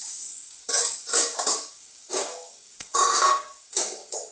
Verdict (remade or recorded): remade